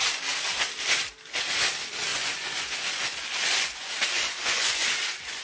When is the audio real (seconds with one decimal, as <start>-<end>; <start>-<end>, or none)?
0.0-2.1